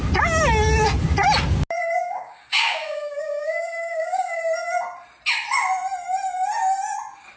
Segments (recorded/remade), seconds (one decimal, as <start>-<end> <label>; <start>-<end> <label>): 0.0-2.0 recorded; 2.0-4.4 remade; 4.4-7.4 recorded